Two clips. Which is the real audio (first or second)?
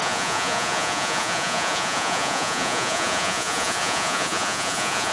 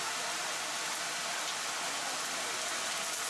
second